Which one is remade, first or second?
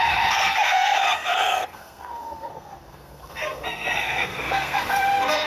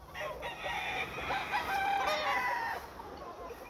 first